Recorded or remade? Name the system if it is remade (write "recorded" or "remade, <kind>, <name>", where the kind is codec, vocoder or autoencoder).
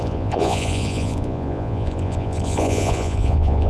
remade, vocoder, Vocos